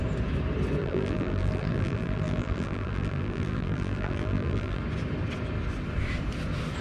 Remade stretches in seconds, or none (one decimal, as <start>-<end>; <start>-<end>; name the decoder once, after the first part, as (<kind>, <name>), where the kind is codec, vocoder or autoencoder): 0.8-4.8 (vocoder, BigVGAN v2)